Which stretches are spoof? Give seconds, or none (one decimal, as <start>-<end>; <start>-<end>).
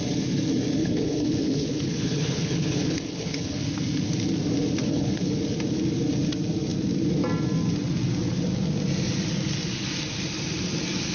0.8-3.6; 4.8-5.4